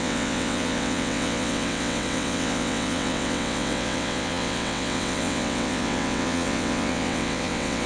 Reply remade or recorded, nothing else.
remade